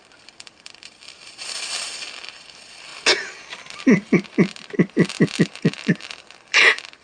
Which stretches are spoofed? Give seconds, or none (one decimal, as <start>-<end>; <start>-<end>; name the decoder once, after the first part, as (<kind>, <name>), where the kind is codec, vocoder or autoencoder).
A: 0.0-2.9 (vocoder, BigVGAN v2); 5.4-7.0